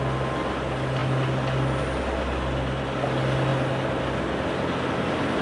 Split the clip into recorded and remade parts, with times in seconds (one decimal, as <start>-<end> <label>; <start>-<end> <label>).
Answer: 0.0-5.4 recorded